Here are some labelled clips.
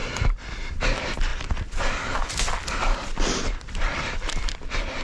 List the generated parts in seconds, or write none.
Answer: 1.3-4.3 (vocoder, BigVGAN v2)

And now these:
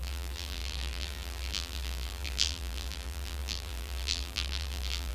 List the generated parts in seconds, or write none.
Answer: 0.0-5.1 (vocoder, BigVGAN v2)

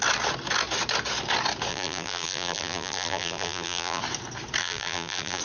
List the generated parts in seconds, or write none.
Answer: 1.7-4.0 (vocoder, BigVGAN v2); 4.6-5.4

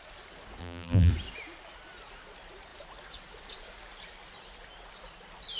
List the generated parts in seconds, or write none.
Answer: 0.6-1.1 (vocoder, BigVGAN v2)